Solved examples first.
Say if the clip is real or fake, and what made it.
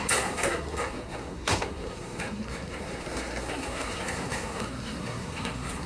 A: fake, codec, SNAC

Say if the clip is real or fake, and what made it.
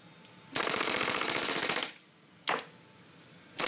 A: real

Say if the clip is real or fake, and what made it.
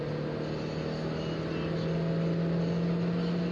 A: real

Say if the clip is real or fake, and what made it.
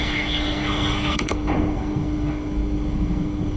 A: fake, codec, SNAC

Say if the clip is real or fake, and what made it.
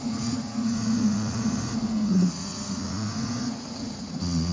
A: fake, vocoder, Vocos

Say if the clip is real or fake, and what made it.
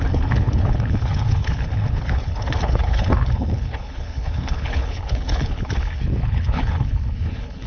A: fake, codec, HILCodec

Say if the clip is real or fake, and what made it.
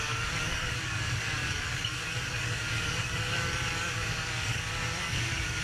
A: fake, codec, DAC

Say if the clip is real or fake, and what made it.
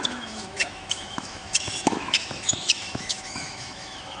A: fake, autoencoder, DAC-VAE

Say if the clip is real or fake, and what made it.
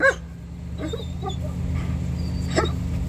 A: real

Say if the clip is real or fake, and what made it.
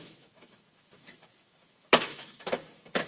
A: fake, autoencoder, DAC-VAE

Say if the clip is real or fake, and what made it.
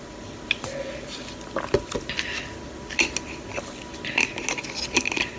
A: real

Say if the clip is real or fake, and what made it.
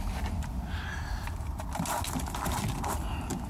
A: real